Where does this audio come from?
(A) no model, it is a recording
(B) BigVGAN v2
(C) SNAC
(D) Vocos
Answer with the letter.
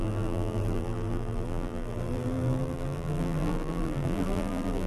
B